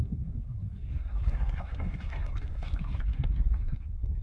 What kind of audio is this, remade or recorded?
remade